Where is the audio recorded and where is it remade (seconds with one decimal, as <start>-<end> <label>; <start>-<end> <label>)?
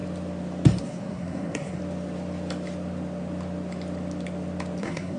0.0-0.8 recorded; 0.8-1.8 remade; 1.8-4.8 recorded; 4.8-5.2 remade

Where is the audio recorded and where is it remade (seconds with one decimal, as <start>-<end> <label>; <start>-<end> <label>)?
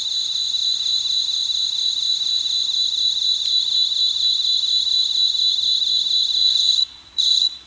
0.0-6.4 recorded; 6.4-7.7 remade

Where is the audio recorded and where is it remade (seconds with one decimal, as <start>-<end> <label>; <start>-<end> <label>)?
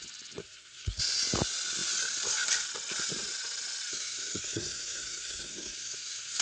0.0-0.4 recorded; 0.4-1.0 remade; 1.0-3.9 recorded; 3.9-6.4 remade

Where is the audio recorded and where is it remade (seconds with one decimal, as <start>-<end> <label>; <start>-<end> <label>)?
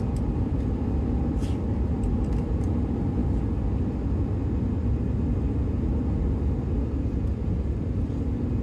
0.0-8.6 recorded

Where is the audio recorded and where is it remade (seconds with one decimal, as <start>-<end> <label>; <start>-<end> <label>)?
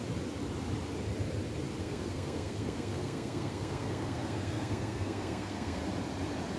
0.0-1.8 recorded; 1.8-5.8 remade; 5.8-6.6 recorded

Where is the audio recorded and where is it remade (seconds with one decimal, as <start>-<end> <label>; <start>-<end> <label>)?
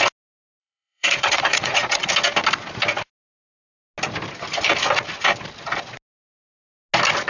0.0-0.6 recorded; 0.6-2.1 remade; 2.1-7.3 recorded